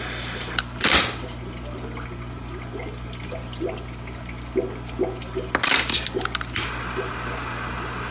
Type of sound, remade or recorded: recorded